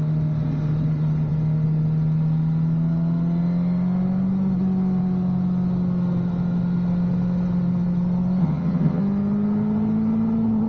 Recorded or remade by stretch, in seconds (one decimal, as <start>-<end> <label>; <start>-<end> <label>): 0.0-8.4 recorded; 8.4-9.0 remade; 9.0-10.7 recorded